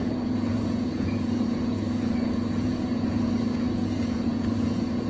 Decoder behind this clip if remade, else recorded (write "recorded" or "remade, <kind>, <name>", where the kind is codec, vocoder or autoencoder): remade, vocoder, Vocos